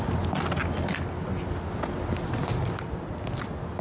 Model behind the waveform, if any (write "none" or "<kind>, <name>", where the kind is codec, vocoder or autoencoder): none